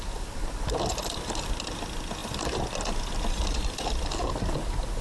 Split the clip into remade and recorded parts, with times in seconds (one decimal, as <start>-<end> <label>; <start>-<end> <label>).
0.0-5.0 recorded